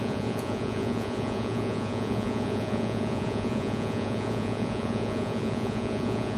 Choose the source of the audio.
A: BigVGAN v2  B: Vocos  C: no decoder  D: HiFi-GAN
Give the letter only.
B